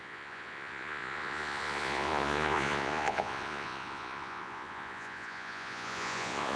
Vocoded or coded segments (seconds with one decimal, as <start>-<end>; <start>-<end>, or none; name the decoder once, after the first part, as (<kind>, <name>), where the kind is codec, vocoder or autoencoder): 0.0-6.6 (vocoder, Vocos)